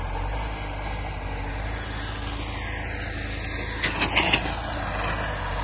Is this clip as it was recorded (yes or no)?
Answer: yes